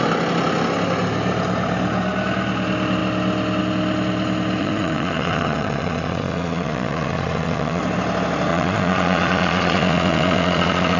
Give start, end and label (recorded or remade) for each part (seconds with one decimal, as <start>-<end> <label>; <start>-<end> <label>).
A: 0.0-4.6 recorded; 4.6-7.8 remade; 7.8-8.5 recorded; 8.5-11.0 remade